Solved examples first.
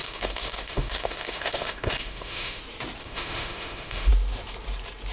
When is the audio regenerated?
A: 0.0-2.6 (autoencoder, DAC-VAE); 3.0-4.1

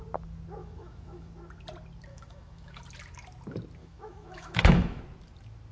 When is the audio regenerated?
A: 0.6-1.3 (autoencoder, DAC-VAE); 2.1-2.8; 3.8-5.0

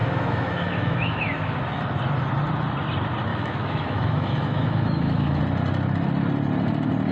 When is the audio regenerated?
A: 0.0-1.8 (autoencoder, DAC-VAE); 3.3-5.4

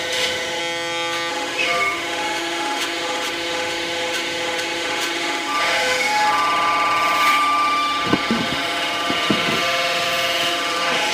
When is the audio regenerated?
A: 0.0-0.6 (autoencoder, DAC-VAE); 1.3-11.1

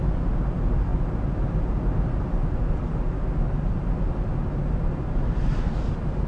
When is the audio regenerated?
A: none